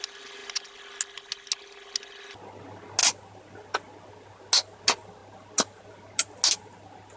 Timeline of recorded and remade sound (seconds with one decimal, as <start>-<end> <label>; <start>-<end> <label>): 0.0-7.2 recorded

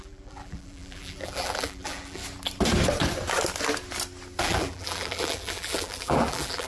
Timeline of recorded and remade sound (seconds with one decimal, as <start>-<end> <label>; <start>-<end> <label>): 0.0-2.2 remade; 2.2-4.4 recorded; 4.4-6.7 remade

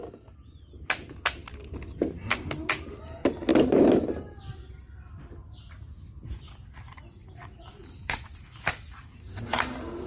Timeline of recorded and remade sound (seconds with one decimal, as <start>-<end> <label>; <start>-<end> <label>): 0.0-7.2 recorded; 7.2-8.7 remade; 8.7-10.1 recorded

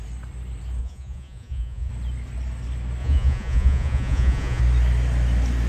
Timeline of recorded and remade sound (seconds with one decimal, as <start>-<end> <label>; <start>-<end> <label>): 0.0-0.8 recorded; 0.8-1.9 remade; 1.9-3.0 recorded; 3.0-4.6 remade; 4.6-5.7 recorded